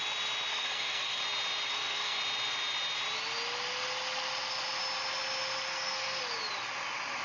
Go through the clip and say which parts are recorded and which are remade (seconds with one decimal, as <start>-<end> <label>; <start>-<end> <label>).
0.0-0.5 recorded; 0.5-1.2 remade; 1.2-1.7 recorded; 1.7-2.2 remade; 2.2-5.7 recorded; 5.7-6.2 remade; 6.2-7.2 recorded